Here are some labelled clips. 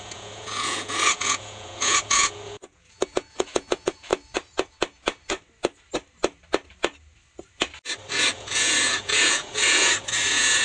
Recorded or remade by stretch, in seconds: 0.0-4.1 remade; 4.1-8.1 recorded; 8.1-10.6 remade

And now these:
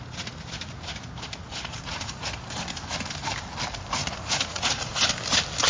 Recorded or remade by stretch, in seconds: 0.0-1.7 recorded; 1.7-2.3 remade; 2.3-4.0 recorded; 4.0-5.1 remade; 5.1-5.7 recorded